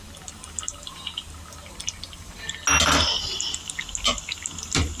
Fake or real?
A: real